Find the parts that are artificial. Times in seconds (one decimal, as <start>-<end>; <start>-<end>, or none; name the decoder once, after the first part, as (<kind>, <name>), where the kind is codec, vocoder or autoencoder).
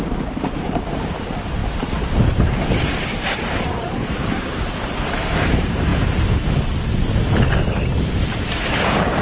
0.0-5.9 (vocoder, BigVGAN v2); 8.2-9.2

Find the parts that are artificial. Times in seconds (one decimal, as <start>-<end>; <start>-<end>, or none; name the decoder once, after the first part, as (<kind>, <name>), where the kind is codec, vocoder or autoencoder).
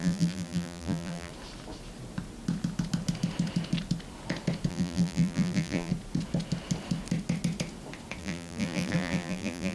0.0-1.3 (vocoder, BigVGAN v2); 4.7-5.9; 8.2-9.7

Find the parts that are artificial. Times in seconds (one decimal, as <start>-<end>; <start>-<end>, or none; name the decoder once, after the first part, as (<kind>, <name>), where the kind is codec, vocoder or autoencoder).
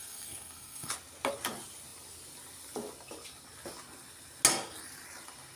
0.0-0.9 (codec, SNAC)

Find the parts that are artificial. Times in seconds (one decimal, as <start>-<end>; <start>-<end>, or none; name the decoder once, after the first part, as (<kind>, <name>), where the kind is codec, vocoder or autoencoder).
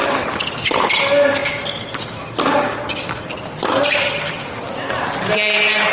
none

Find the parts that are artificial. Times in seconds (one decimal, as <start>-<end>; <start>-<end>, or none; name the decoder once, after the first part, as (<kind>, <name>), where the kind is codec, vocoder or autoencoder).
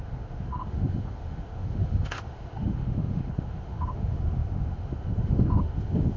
0.0-6.2 (autoencoder, DAC-VAE)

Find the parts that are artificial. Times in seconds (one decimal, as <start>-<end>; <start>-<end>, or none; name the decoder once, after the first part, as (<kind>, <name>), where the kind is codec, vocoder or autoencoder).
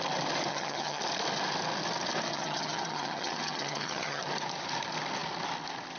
0.5-1.0 (vocoder, HiFi-GAN); 2.3-4.2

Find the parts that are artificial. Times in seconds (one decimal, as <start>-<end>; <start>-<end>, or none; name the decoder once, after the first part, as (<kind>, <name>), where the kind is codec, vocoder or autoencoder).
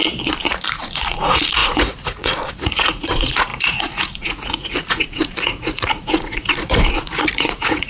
0.7-7.9 (vocoder, Vocos)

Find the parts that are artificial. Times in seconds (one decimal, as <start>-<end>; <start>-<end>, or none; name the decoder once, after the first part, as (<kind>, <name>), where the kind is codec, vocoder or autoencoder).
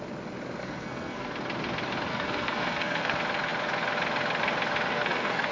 0.6-1.3 (codec, SNAC); 2.1-3.1; 4.9-5.5